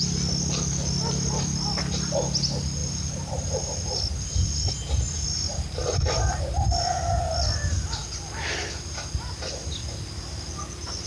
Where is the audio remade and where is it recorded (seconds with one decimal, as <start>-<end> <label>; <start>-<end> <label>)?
0.0-2.8 recorded; 2.8-4.7 remade; 4.7-8.0 recorded; 8.0-8.8 remade; 8.8-11.1 recorded